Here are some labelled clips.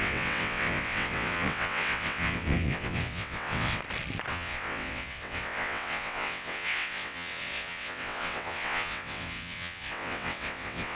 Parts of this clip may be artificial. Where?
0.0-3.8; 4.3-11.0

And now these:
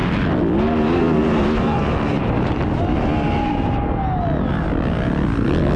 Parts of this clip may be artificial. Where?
none

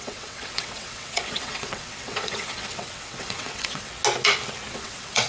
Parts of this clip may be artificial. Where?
0.0-3.9; 4.7-5.3